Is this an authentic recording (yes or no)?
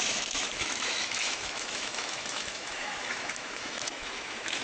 no